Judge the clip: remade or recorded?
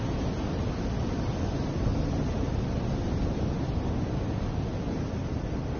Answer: recorded